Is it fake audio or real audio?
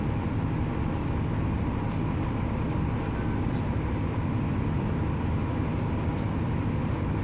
fake